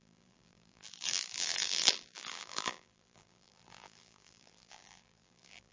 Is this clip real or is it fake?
fake